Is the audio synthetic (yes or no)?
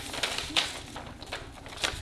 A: no